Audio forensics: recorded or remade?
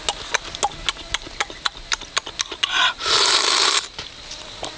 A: recorded